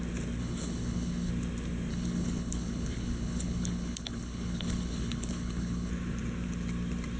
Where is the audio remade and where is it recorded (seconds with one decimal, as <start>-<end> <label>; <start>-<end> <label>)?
0.0-0.4 recorded; 0.4-1.3 remade; 1.3-1.9 recorded; 1.9-5.9 remade; 5.9-7.2 recorded